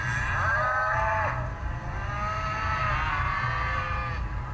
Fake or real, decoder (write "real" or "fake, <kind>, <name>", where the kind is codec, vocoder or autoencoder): real